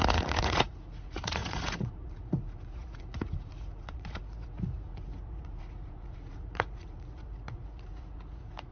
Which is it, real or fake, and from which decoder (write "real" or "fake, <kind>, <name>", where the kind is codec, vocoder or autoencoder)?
fake, vocoder, Vocos